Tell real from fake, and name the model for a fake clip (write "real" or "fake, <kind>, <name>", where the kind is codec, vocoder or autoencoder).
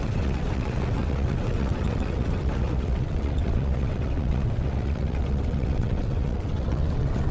fake, vocoder, WaveNeXt